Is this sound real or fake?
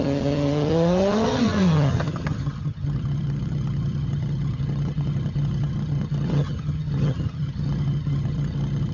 fake